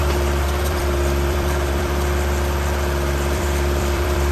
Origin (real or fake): fake